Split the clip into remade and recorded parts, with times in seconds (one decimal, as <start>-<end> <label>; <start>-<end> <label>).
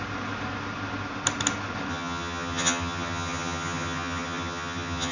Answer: 0.0-1.9 recorded; 1.9-5.1 remade